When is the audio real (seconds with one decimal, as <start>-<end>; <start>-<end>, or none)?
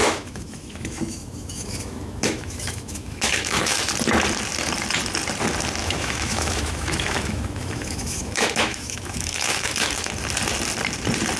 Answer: 3.9-5.8; 10.1-11.4